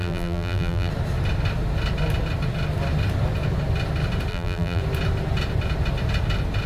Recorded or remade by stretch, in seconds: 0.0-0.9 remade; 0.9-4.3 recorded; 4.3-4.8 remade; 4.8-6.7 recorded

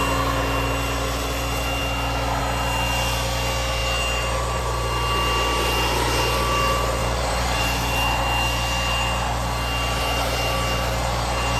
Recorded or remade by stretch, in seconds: 0.0-7.0 recorded; 7.0-8.2 remade; 8.2-11.6 recorded

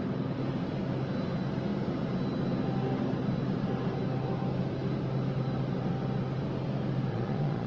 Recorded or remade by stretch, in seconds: 0.0-7.1 recorded; 7.1-7.7 remade

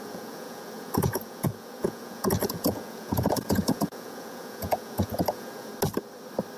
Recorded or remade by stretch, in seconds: 0.0-5.7 remade; 5.7-6.6 recorded